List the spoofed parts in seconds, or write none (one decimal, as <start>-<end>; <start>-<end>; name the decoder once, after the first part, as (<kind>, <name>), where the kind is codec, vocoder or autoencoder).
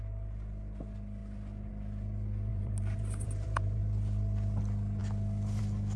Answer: 2.5-3.8 (vocoder, BigVGAN v2)